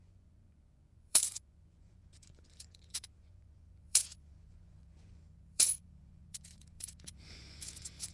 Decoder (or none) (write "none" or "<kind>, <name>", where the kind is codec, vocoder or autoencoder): vocoder, Vocos